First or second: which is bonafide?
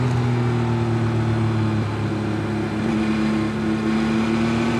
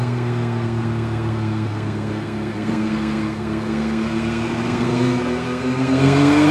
first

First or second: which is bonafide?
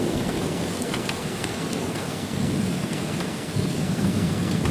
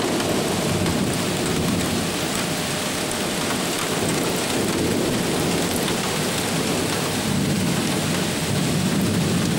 second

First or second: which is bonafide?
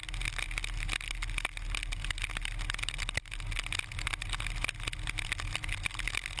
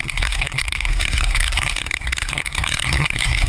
first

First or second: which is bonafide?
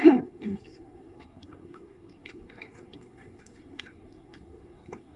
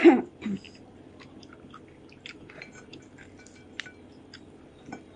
second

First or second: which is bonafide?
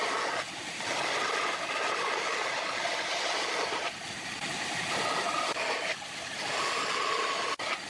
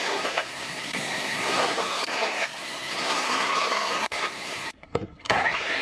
first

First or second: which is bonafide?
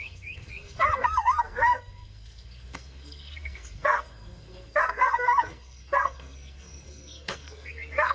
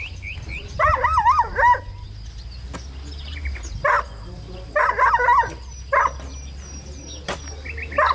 second